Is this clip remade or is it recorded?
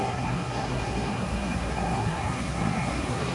remade